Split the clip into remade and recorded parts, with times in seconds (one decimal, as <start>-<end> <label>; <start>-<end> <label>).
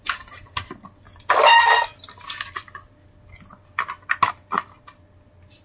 0.0-5.6 recorded